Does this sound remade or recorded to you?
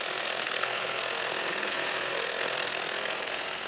remade